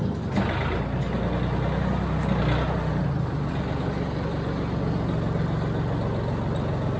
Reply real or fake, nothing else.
real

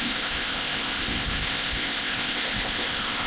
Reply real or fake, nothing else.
fake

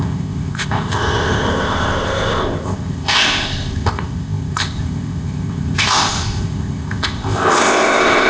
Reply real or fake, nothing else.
fake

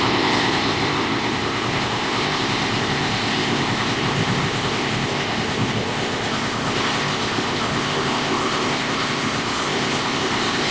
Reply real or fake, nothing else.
fake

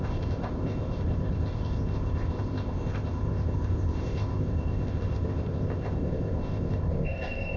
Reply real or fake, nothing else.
fake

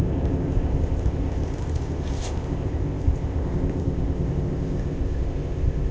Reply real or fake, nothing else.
fake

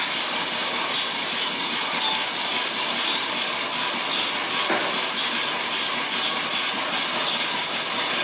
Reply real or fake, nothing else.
real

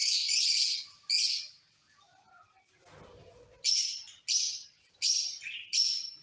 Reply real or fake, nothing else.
real